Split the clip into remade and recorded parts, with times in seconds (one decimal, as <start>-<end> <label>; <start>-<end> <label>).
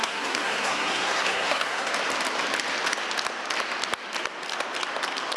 0.0-1.9 remade; 1.9-5.4 recorded